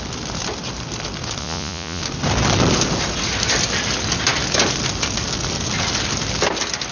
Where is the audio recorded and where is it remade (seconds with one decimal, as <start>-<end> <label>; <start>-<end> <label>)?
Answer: 0.0-1.4 recorded; 1.4-2.0 remade; 2.0-6.9 recorded